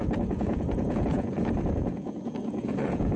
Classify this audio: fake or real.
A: fake